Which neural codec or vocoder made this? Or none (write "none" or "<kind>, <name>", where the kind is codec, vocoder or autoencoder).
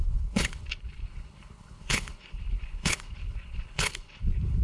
codec, HILCodec